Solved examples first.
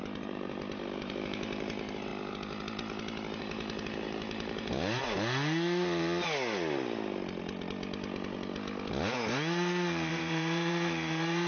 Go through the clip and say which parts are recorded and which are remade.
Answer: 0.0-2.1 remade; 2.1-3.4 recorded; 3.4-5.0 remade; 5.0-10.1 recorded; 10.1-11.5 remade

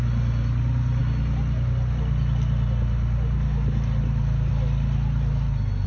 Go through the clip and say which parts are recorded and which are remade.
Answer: 0.0-5.9 recorded

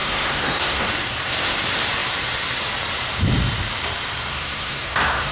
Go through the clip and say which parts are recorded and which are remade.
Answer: 0.0-0.9 remade; 0.9-4.3 recorded; 4.3-5.3 remade